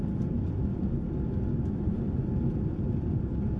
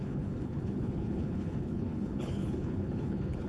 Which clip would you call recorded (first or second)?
first